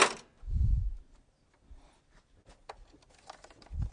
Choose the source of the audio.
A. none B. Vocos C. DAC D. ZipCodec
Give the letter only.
A